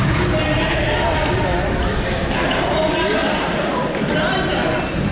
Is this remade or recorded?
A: recorded